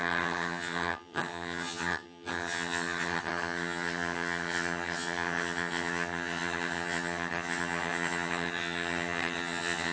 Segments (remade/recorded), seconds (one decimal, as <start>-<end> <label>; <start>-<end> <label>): 0.0-9.9 remade